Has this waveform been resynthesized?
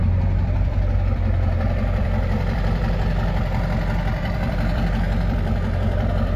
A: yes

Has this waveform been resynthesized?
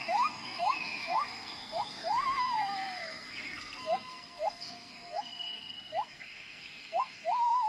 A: yes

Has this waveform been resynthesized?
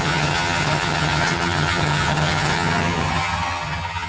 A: yes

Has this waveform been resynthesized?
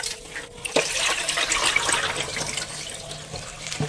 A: no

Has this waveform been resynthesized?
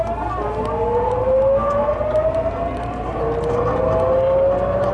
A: no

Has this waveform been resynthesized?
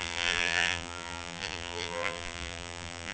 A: yes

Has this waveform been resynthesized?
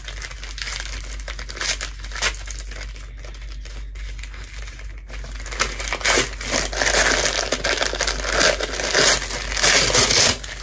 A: no